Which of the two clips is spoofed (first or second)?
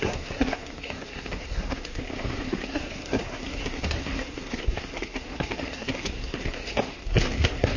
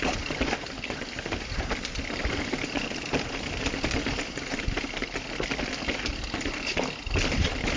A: first